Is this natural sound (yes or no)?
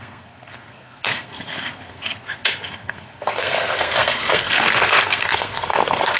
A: no